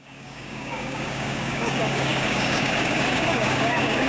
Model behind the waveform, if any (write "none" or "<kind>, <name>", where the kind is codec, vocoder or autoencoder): codec, DAC